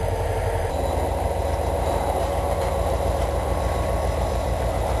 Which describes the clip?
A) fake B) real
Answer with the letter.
A